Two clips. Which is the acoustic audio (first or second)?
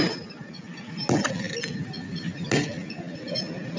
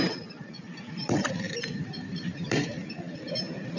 first